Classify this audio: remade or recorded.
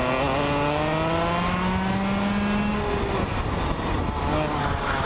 recorded